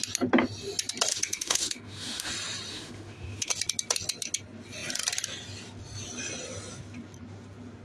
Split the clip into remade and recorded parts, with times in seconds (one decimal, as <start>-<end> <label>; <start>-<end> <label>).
0.0-1.1 recorded; 1.1-2.3 remade; 2.3-2.7 recorded; 2.7-3.5 remade; 3.5-7.8 recorded